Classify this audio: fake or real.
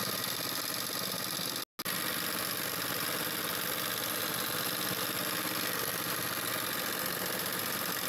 real